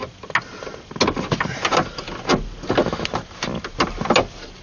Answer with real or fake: real